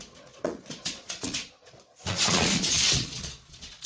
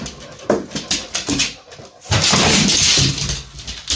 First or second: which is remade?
first